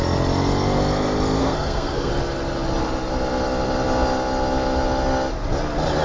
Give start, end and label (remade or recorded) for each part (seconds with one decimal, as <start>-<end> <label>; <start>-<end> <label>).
0.0-1.4 recorded; 1.4-2.1 remade; 2.1-6.0 recorded